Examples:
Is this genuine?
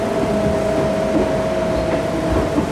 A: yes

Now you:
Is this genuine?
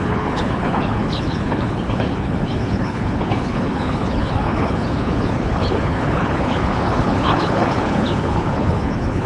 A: no